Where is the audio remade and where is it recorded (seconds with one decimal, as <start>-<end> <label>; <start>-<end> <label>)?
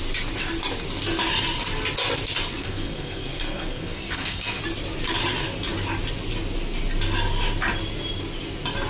0.0-2.6 recorded; 2.6-4.6 remade; 4.6-8.9 recorded